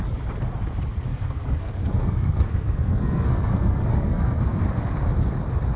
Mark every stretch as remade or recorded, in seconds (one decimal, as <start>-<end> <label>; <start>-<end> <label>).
0.0-1.1 recorded; 1.1-4.6 remade; 4.6-5.8 recorded